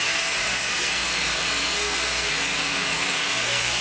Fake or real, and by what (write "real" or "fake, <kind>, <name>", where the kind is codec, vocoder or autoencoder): fake, codec, SNAC